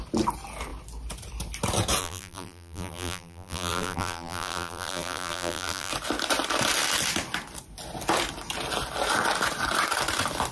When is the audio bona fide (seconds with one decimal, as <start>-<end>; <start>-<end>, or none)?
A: 0.0-2.0; 5.9-10.5